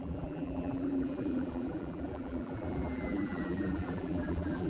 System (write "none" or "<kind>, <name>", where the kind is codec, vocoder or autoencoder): vocoder, BigVGAN v2